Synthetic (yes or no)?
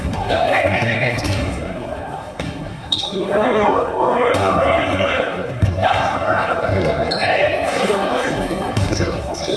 yes